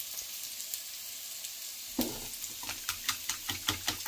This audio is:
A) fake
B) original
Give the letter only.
B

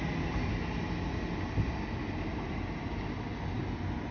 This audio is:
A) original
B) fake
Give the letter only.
A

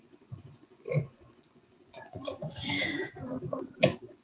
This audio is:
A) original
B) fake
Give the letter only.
B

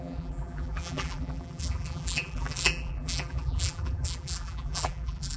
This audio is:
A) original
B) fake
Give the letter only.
B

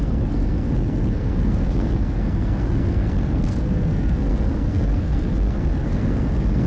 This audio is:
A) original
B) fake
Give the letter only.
B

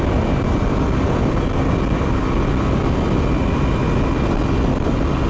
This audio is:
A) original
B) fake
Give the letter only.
A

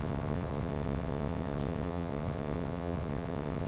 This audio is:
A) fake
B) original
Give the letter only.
A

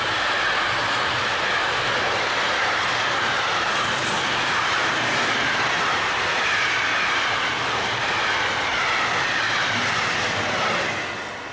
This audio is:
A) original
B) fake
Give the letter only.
A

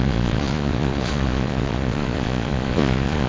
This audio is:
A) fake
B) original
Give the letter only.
A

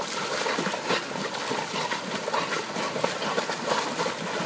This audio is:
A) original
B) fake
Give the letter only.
A